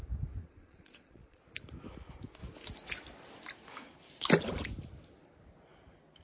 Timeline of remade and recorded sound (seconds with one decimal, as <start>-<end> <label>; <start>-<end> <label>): 0.0-0.4 recorded; 0.4-1.4 remade; 1.4-6.2 recorded